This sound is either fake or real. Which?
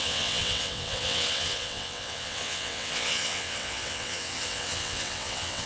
fake